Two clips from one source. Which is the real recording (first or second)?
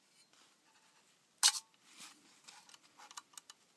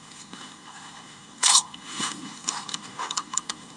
first